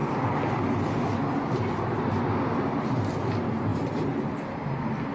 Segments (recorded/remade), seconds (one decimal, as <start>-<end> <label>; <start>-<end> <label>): 0.0-3.7 recorded; 3.7-4.3 remade; 4.3-5.1 recorded